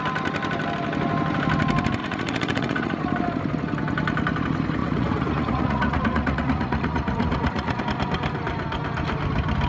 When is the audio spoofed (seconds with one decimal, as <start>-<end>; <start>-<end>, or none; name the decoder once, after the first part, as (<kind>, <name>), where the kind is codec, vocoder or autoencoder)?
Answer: 2.0-3.0 (vocoder, Vocos); 4.8-7.8